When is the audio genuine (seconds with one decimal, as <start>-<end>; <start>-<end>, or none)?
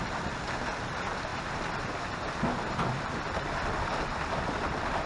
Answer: 0.0-5.1